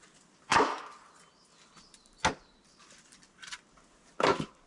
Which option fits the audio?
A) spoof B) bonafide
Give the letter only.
B